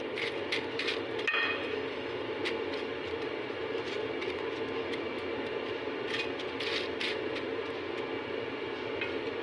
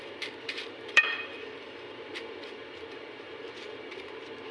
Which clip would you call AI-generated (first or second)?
second